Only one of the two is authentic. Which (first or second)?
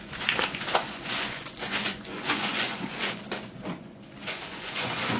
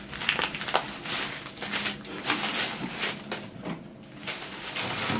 second